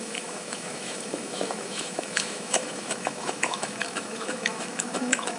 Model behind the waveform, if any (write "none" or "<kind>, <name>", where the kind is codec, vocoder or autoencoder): autoencoder, DAC-VAE